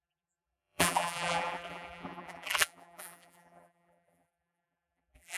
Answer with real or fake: fake